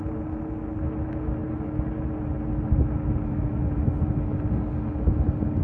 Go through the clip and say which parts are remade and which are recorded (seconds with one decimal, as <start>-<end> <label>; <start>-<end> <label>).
0.0-5.6 recorded